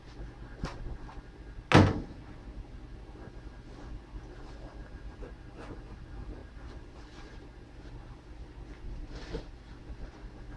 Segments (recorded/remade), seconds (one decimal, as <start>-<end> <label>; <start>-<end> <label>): 0.0-10.6 recorded